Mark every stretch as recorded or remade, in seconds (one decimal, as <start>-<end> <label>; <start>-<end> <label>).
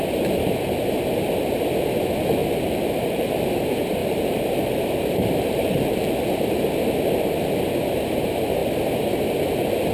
0.0-2.4 recorded; 2.4-3.5 remade; 3.5-4.0 recorded; 4.0-6.5 remade; 6.5-9.9 recorded